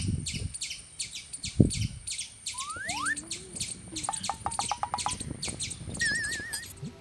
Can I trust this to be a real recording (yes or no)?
yes